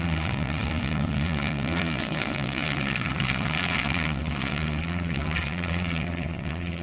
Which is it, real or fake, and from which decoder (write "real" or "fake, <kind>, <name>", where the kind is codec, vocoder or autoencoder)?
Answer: fake, vocoder, Vocos